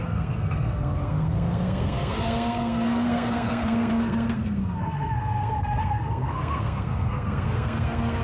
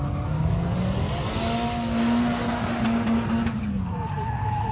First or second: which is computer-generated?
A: first